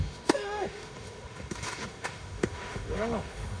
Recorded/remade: remade